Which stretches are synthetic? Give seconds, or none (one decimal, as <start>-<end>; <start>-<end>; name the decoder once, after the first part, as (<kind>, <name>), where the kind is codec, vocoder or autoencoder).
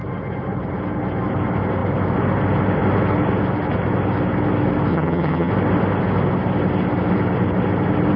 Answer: 4.9-5.5 (vocoder, HiFi-GAN)